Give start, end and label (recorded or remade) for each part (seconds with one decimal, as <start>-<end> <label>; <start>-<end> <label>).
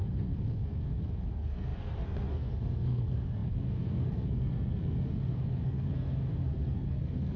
0.0-7.4 remade